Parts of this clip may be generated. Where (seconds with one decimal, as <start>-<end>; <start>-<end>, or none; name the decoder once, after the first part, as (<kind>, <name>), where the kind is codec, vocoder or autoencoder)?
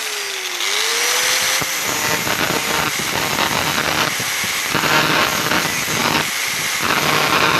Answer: none